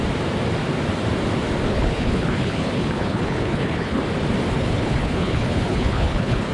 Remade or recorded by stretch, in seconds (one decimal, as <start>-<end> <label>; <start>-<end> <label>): 0.0-1.7 recorded; 1.7-4.0 remade; 4.0-4.5 recorded; 4.5-6.5 remade